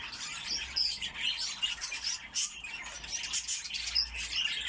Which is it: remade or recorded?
recorded